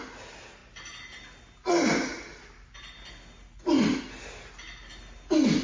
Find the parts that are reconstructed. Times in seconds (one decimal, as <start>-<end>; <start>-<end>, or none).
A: none